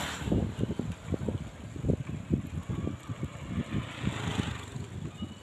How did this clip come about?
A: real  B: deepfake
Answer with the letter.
A